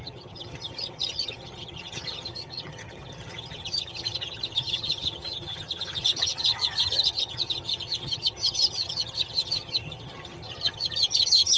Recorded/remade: remade